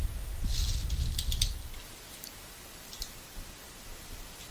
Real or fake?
real